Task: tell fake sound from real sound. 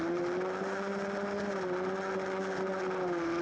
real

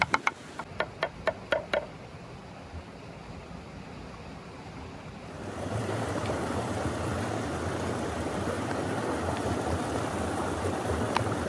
real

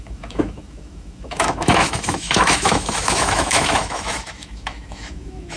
fake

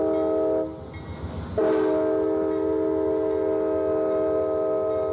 real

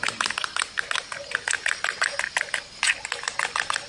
real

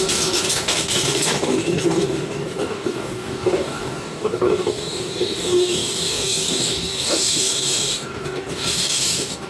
fake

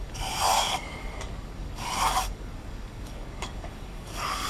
fake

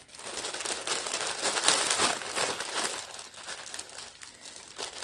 real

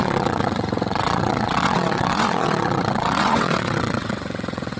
fake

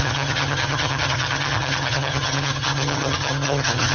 fake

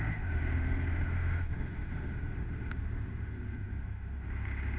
fake